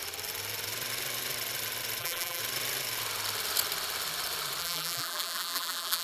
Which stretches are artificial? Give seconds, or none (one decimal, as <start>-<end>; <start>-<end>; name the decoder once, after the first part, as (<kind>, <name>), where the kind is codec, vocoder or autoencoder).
2.0-2.4 (vocoder, BigVGAN v2); 4.6-6.0